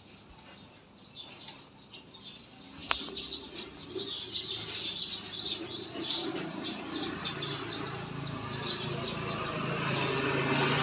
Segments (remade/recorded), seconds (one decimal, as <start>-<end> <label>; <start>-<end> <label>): 0.0-2.8 recorded; 2.8-3.9 remade; 3.9-6.2 recorded; 6.2-7.2 remade; 7.2-10.8 recorded